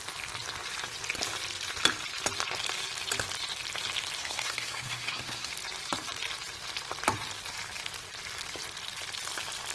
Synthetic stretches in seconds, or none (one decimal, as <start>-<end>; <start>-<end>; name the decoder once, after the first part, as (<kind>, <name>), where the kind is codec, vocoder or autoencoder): 4.2-5.5 (codec, SNAC)